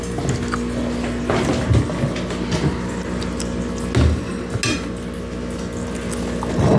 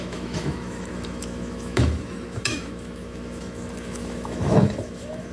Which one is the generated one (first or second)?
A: second